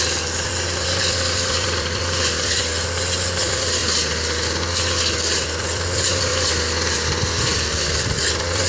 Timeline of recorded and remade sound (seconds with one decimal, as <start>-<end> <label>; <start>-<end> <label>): 0.0-3.8 remade; 3.8-5.1 recorded; 5.1-6.3 remade; 6.3-6.9 recorded; 6.9-8.7 remade